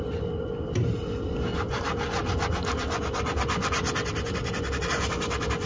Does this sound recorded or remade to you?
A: recorded